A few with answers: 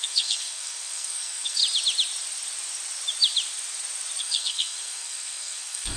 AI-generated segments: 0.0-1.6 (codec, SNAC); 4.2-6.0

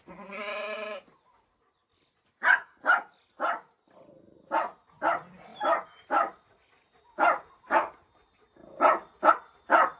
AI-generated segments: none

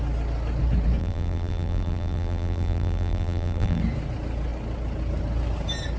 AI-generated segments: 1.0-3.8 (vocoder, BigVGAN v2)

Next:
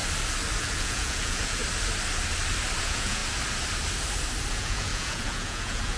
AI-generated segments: 0.6-1.6 (vocoder, Vocos); 2.8-3.2; 4.5-6.0

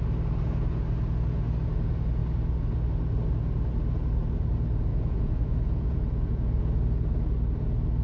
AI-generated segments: 4.9-6.6 (vocoder, Vocos)

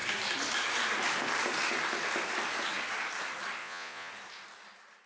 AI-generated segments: 3.6-4.1 (vocoder, Vocos)

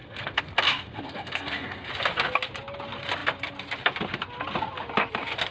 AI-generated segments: 0.0-1.9 (codec, SNAC)

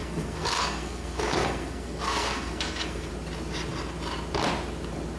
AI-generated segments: 0.0-3.1 (codec, SNAC)